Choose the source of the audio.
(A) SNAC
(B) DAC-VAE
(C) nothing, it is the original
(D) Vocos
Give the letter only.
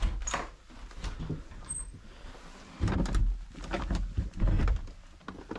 C